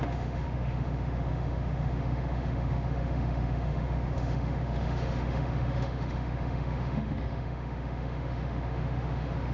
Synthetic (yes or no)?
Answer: yes